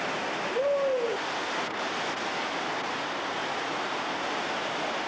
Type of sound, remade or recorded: recorded